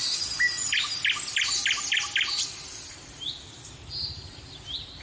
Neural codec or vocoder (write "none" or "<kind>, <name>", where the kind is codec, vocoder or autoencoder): vocoder, BigVGAN v2